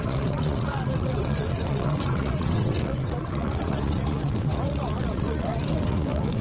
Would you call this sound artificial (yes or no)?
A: yes